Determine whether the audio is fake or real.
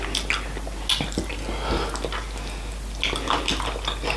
real